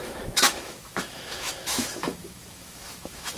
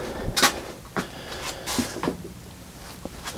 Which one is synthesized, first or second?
first